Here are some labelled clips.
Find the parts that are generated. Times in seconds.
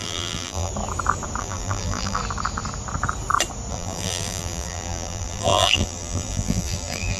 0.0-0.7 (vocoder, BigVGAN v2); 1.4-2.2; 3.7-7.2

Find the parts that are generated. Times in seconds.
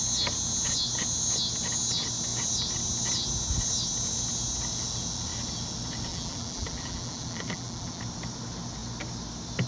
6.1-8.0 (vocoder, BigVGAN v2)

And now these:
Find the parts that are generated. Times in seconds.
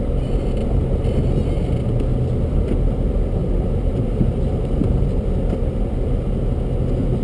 0.6-1.2 (vocoder, BigVGAN v2); 2.1-2.8; 3.4-5.1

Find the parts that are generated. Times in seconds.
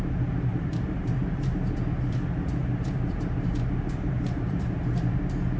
0.5-1.7 (vocoder, BigVGAN v2); 2.6-5.1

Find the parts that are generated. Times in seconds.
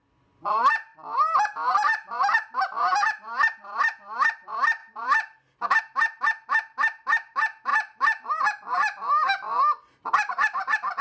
none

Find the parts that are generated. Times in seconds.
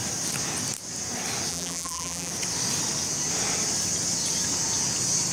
1.5-2.3 (vocoder, BigVGAN v2)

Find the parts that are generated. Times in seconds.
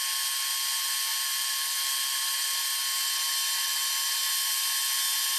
none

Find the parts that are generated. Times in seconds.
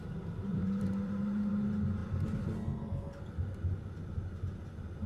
0.5-1.5 (vocoder, BigVGAN v2)